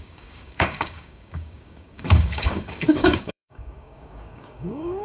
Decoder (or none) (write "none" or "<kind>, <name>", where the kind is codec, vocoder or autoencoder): codec, DAC